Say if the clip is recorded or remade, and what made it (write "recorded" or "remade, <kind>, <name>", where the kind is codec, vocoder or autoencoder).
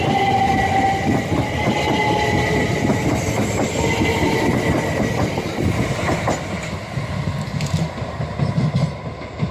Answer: recorded